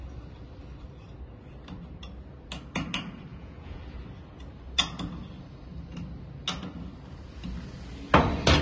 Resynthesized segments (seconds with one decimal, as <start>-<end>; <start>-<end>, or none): 3.3-3.8